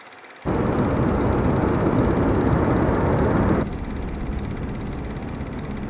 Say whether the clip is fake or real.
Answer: real